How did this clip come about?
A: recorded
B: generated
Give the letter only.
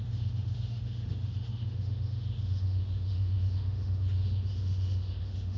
B